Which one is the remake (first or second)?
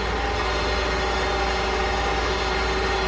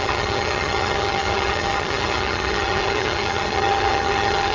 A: second